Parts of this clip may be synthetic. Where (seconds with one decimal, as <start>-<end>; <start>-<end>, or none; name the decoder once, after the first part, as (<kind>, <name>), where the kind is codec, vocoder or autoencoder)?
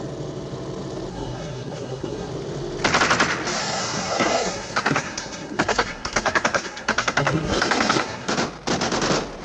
1.1-2.3 (codec, SNAC); 3.6-8.3